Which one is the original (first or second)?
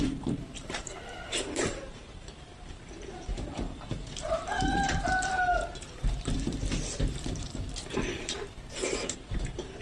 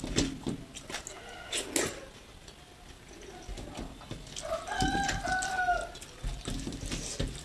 second